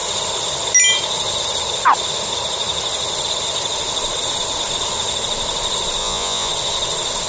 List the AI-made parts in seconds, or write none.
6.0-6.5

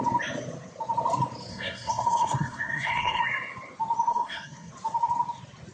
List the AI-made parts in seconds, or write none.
1.5-3.2; 4.1-4.7

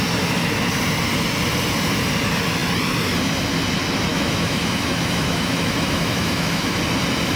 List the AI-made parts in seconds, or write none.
4.1-6.8

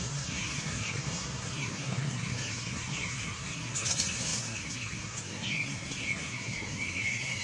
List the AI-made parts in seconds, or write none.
0.0-7.4

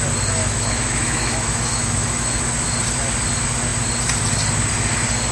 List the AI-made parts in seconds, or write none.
0.4-2.4

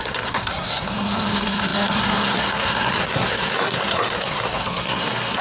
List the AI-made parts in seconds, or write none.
0.0-5.4

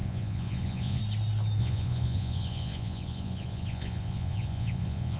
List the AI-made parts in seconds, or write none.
0.0-1.0; 1.6-5.2

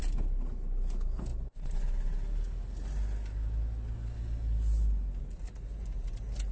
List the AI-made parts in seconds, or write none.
none